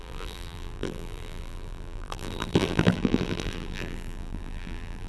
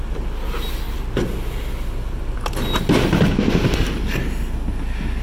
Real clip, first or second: second